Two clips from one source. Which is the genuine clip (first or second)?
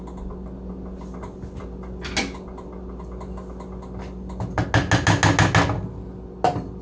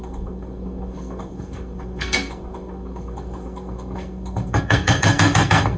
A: first